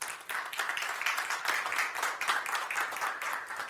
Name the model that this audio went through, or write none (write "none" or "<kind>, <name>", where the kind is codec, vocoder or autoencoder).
none